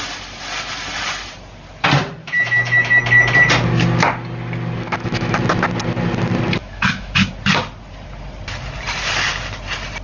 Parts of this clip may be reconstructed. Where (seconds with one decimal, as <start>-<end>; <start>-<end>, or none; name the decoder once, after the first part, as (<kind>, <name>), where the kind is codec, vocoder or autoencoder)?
2.2-3.0 (autoencoder, DAC-VAE); 4.8-5.4; 6.6-7.3